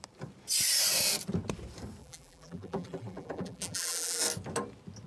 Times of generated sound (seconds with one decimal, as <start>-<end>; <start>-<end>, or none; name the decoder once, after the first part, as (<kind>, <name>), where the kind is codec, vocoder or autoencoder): 2.0-4.2 (vocoder, BigVGAN v2)